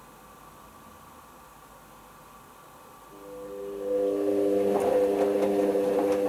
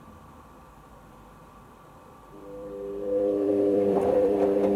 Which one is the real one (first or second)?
first